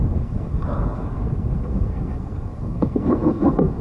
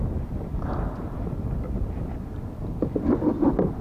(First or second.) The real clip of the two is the second